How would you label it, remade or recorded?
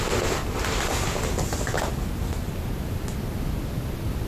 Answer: recorded